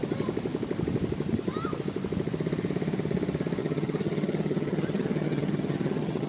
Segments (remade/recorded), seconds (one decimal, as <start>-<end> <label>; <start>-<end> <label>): 0.0-3.6 recorded; 3.6-6.3 remade